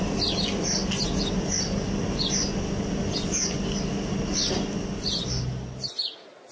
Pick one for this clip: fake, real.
real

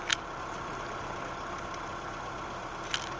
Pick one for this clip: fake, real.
real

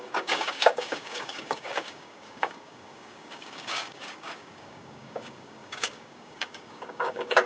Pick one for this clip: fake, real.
fake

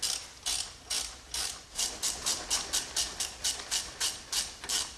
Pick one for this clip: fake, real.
real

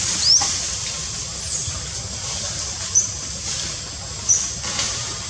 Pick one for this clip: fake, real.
real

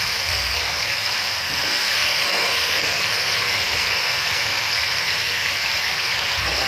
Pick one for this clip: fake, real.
fake